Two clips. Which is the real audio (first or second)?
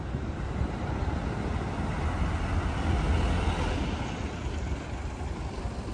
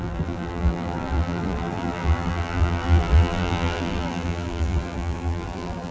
first